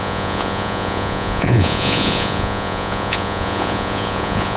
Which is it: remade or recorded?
remade